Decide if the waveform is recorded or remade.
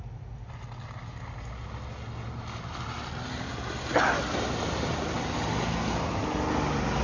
recorded